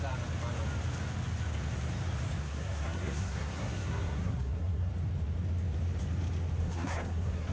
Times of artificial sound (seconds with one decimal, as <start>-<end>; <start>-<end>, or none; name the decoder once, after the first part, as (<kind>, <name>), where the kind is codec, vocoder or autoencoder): 2.4-4.9 (codec, SNAC); 6.6-7.5

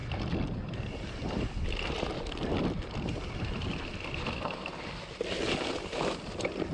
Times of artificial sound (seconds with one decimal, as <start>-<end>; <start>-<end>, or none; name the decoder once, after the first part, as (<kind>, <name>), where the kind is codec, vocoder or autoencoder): none